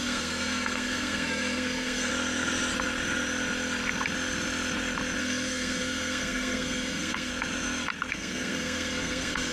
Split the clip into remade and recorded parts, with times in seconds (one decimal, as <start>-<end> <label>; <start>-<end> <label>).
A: 0.0-2.1 remade; 2.1-5.2 recorded; 5.2-7.3 remade; 7.3-8.1 recorded; 8.1-9.5 remade